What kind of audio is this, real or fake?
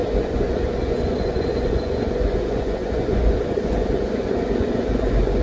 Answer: fake